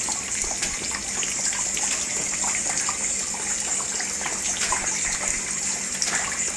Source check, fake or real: fake